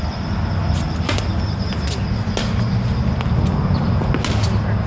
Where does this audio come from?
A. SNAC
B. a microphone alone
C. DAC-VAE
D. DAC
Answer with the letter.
B